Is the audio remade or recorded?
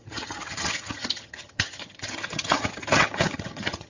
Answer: remade